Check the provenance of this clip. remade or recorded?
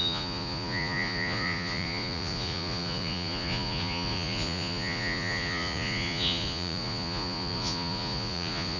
remade